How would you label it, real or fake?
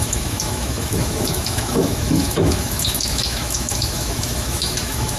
fake